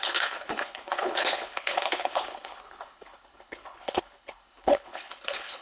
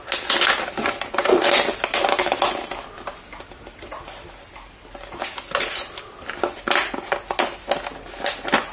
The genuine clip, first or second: second